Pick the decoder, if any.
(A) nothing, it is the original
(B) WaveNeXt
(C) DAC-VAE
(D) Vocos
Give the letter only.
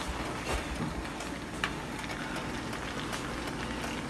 A